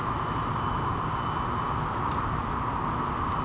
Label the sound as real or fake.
real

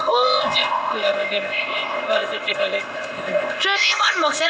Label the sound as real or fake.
fake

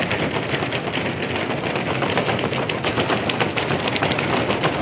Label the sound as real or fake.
real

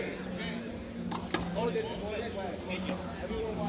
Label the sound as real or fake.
real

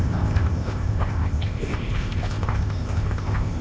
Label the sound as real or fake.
fake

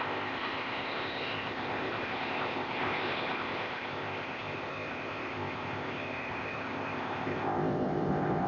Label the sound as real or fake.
fake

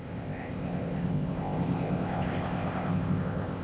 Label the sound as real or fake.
fake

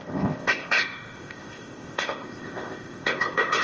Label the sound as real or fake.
fake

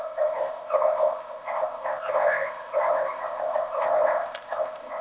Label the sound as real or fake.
fake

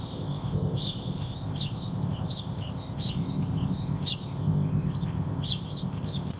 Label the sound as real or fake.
fake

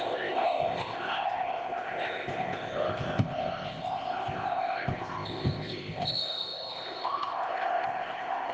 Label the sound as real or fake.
fake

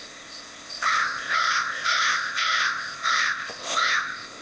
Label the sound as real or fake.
fake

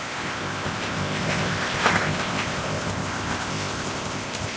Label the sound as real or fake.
fake